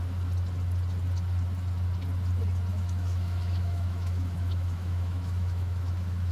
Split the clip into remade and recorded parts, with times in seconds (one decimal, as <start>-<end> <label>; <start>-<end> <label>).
0.0-2.7 recorded; 2.7-6.3 remade